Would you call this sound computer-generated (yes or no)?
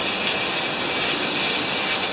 no